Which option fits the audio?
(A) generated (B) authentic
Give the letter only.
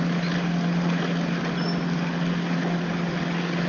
B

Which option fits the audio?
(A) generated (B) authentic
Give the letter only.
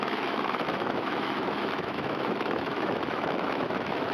A